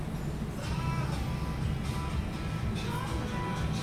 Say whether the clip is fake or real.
real